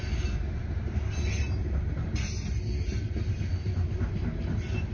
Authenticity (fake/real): real